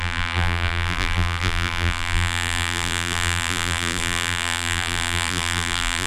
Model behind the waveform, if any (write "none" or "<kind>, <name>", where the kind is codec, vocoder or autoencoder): vocoder, BigVGAN v2